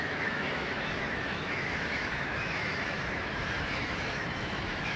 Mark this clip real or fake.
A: fake